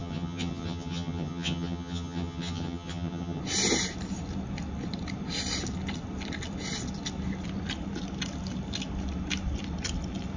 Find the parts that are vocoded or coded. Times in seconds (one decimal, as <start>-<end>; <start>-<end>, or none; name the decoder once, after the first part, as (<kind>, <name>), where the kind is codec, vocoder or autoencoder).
0.0-3.4 (vocoder, HiFi-GAN)